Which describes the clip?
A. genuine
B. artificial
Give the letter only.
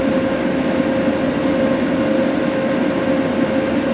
A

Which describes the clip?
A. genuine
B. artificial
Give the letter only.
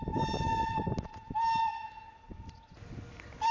A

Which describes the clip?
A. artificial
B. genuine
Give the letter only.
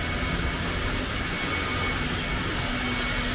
B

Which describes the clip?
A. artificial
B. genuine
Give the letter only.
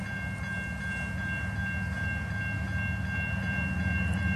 B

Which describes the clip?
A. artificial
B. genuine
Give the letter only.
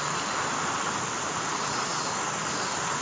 B